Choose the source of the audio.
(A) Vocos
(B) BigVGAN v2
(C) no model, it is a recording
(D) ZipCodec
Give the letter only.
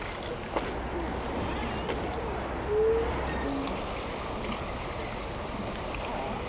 C